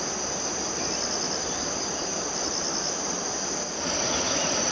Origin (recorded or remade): recorded